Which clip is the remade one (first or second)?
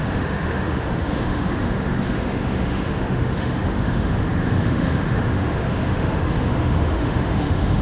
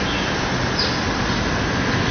first